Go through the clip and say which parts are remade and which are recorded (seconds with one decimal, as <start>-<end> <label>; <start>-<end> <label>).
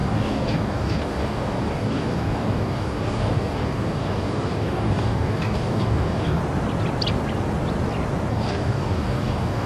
0.0-6.4 remade; 6.4-8.3 recorded; 8.3-9.7 remade